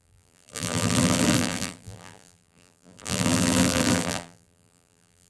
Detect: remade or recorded remade